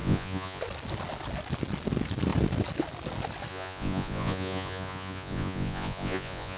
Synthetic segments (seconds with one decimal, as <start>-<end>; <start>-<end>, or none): 0.0-0.6; 3.5-6.6